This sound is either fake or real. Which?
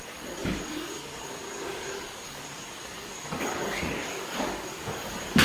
fake